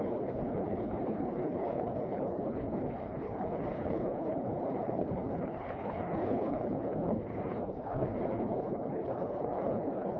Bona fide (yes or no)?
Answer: no